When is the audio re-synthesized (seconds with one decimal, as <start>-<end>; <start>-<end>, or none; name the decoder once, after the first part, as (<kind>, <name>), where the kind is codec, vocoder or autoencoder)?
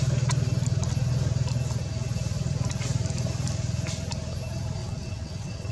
4.8-5.7 (vocoder, WaveNeXt)